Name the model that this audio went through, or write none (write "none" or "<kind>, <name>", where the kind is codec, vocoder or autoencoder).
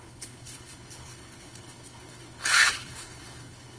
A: codec, HILCodec